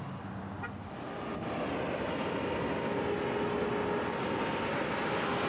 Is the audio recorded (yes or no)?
yes